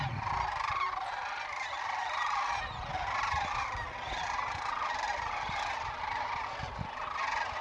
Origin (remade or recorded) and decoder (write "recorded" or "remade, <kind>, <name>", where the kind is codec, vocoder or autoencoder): recorded